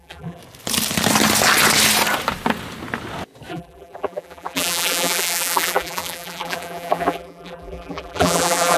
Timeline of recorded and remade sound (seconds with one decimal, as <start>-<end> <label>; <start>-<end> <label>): 0.0-0.4 remade; 0.4-3.5 recorded; 3.5-8.8 remade